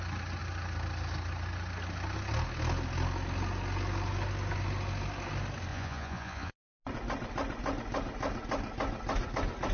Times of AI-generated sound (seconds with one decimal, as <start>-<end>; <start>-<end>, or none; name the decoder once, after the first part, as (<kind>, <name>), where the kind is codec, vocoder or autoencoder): 5.7-6.7 (vocoder, Vocos)